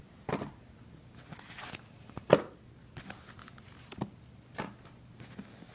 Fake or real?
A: real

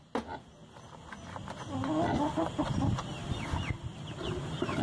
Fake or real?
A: real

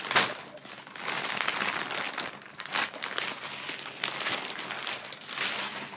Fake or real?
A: real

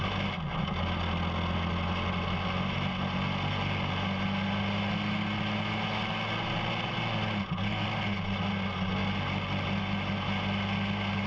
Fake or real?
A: real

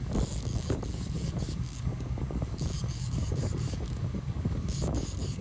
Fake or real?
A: fake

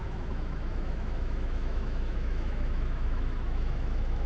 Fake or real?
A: fake